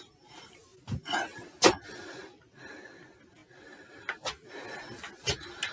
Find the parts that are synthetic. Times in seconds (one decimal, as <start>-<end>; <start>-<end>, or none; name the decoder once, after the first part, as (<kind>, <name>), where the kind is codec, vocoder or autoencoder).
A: none